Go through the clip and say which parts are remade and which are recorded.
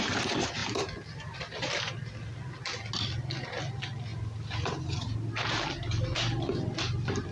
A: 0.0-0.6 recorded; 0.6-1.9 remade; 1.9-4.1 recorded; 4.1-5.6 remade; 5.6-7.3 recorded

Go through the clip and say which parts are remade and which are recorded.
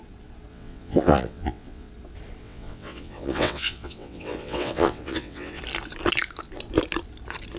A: 0.0-0.5 recorded; 0.5-1.9 remade; 1.9-2.4 recorded; 2.4-5.6 remade; 5.6-7.6 recorded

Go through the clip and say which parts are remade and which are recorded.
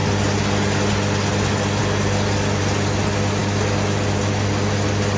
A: 0.0-5.2 recorded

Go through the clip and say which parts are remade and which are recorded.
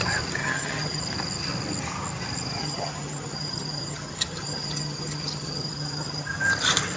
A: 0.0-0.4 recorded; 0.4-1.0 remade; 1.0-2.6 recorded; 2.6-6.4 remade; 6.4-7.0 recorded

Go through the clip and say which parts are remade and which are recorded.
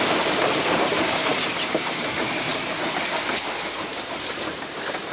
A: 0.0-2.5 remade; 2.5-5.1 recorded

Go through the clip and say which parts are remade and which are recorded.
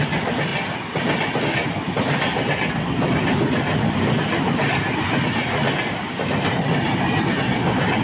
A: 0.0-8.0 recorded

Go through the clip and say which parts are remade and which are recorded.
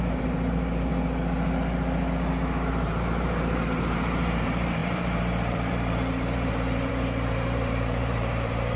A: 0.0-0.9 remade; 0.9-2.7 recorded; 2.7-8.8 remade